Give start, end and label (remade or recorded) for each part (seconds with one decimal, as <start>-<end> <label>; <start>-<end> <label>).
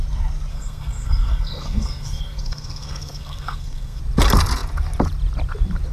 0.0-0.5 recorded; 0.5-4.0 remade; 4.0-5.9 recorded